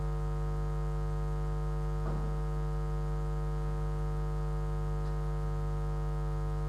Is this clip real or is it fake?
real